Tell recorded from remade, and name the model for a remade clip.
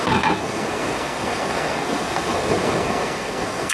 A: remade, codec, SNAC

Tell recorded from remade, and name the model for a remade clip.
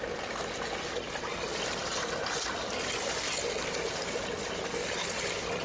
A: recorded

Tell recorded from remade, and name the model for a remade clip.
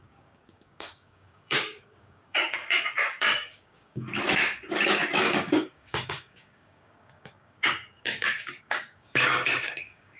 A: remade, codec, DAC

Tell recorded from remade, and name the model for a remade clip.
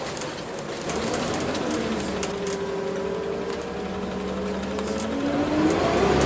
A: recorded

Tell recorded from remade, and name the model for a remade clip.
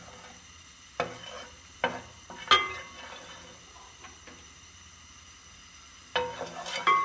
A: recorded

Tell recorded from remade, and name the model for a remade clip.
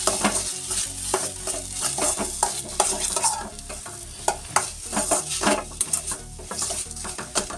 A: recorded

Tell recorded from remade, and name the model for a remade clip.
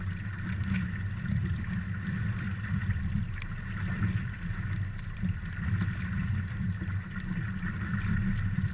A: recorded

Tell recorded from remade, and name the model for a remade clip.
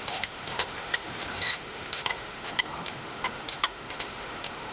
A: remade, autoencoder, DAC-VAE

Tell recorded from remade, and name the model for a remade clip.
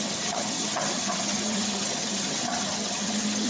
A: remade, vocoder, HiFi-GAN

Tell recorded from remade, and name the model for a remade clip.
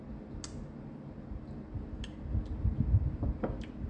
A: recorded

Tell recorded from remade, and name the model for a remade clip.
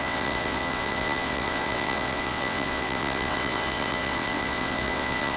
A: remade, vocoder, WaveNeXt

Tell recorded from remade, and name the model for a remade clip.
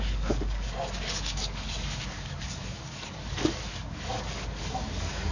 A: remade, codec, DAC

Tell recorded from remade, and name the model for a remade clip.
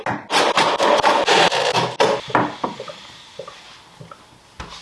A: recorded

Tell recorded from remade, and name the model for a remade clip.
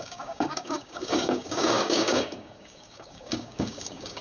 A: remade, codec, DAC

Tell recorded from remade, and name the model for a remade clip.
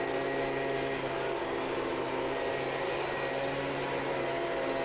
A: recorded